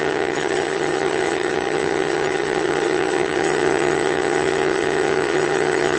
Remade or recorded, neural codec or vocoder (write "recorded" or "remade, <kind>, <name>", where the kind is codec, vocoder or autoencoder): remade, vocoder, HiFi-GAN